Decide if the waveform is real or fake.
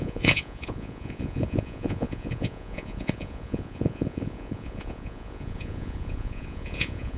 fake